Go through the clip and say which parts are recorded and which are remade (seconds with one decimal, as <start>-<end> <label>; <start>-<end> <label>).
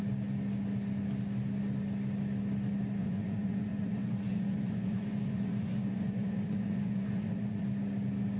0.0-3.0 recorded; 3.0-7.6 remade; 7.6-8.4 recorded